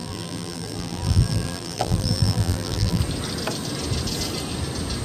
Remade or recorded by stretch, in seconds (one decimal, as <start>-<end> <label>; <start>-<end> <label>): 0.0-3.0 remade; 3.0-5.0 recorded